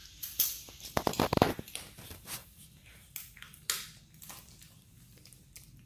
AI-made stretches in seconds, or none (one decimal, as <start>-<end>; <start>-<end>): 0.0-1.6